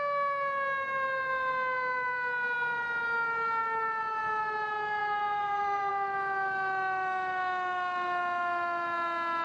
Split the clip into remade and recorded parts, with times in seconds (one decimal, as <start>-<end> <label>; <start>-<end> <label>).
0.0-5.0 recorded; 5.0-5.9 remade; 5.9-9.4 recorded